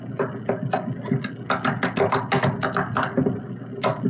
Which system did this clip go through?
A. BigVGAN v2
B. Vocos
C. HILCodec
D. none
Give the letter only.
D